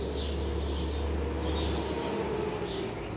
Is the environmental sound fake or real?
real